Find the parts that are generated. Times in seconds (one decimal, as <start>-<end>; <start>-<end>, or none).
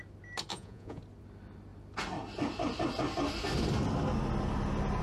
0.5-1.0